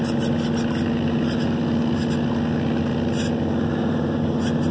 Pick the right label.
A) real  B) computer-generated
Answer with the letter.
A